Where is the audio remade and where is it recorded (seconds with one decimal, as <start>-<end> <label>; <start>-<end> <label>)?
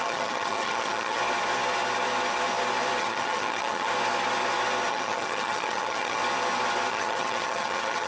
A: 0.0-1.2 remade; 1.2-3.0 recorded; 3.0-3.9 remade; 3.9-4.9 recorded; 4.9-6.2 remade; 6.2-6.9 recorded; 6.9-8.1 remade